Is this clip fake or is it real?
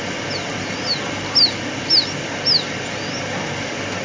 real